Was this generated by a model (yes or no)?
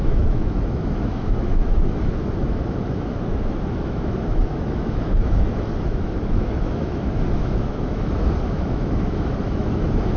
yes